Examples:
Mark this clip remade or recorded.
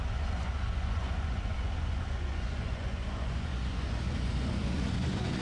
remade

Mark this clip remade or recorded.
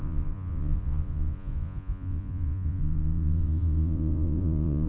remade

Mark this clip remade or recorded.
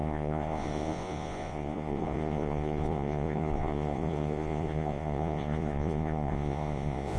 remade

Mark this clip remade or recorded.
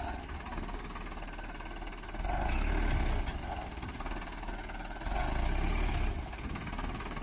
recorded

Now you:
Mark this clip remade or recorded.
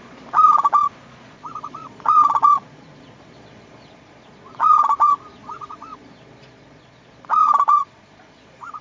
remade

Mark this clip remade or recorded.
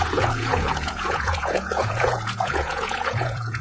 remade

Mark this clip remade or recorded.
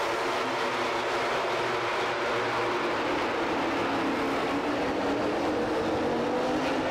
recorded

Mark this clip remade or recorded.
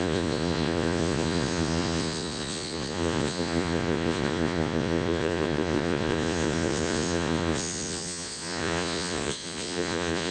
remade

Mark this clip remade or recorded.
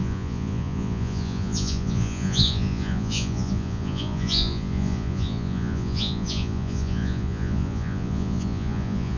remade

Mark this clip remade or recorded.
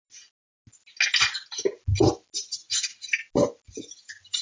recorded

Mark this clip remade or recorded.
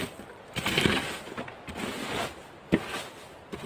recorded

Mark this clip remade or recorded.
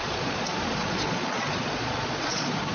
remade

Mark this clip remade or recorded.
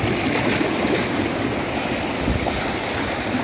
recorded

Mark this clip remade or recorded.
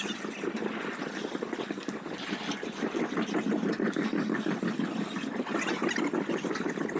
recorded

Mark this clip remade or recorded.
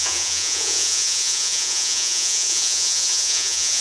remade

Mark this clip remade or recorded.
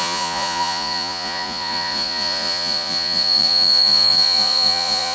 remade